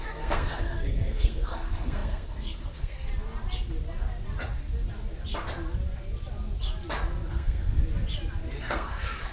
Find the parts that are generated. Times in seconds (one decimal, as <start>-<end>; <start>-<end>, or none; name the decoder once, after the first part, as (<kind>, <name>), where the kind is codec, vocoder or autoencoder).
0.0-3.1 (codec, SNAC); 7.3-7.8; 8.6-9.3

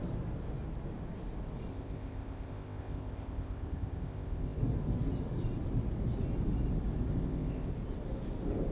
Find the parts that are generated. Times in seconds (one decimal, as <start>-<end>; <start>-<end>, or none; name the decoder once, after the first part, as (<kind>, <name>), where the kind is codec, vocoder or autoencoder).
1.7-4.6 (codec, ZipCodec); 7.1-7.7